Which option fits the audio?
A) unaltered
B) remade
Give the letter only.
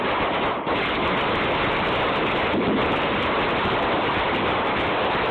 A